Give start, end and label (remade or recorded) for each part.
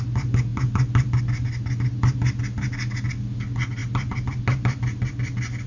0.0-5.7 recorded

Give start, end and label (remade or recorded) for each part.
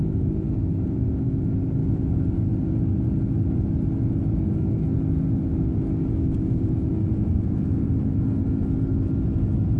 0.0-1.8 recorded; 1.8-2.6 remade; 2.6-5.5 recorded; 5.5-7.9 remade; 7.9-9.8 recorded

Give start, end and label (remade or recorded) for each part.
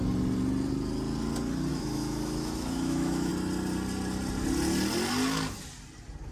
0.0-1.7 recorded; 1.7-3.3 remade; 3.3-6.3 recorded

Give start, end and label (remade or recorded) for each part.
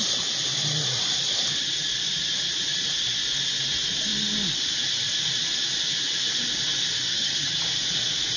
0.0-7.1 recorded; 7.1-7.6 remade; 7.6-8.4 recorded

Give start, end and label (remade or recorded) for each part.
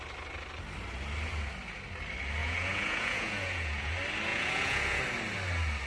0.0-2.4 recorded; 2.4-3.9 remade; 3.9-4.3 recorded; 4.3-5.0 remade; 5.0-5.9 recorded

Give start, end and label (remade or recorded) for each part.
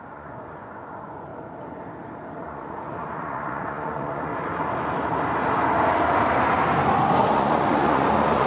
0.0-1.3 remade; 1.3-2.4 recorded; 2.4-4.3 remade; 4.3-7.3 recorded; 7.3-8.5 remade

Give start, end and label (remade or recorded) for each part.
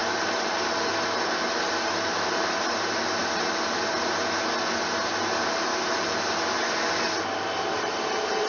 0.0-8.5 recorded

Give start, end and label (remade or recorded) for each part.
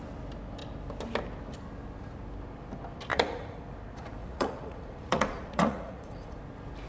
0.0-3.1 recorded; 3.1-3.6 remade; 3.6-4.2 recorded; 4.2-6.4 remade; 6.4-6.9 recorded